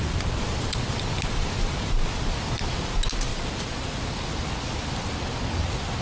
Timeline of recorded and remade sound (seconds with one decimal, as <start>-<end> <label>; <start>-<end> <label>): 0.0-0.9 remade; 0.9-3.3 recorded; 3.3-4.2 remade; 4.2-6.0 recorded

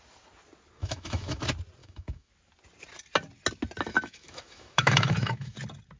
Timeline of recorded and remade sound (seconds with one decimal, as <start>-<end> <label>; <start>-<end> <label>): 0.0-0.8 recorded; 0.8-1.4 remade; 1.4-1.8 recorded; 1.8-2.3 remade; 2.3-3.9 recorded; 3.9-5.6 remade; 5.6-6.0 recorded

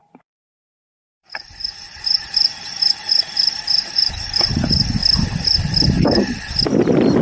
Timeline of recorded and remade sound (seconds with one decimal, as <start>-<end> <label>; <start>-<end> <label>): 0.0-5.0 remade; 5.0-7.2 recorded

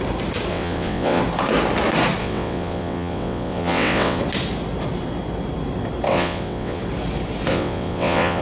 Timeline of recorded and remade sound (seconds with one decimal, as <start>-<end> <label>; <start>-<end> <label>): 0.0-0.5 recorded; 0.5-1.2 remade; 1.2-2.2 recorded; 2.2-4.2 remade; 4.2-6.1 recorded; 6.1-6.8 remade; 6.8-7.5 recorded; 7.5-8.4 remade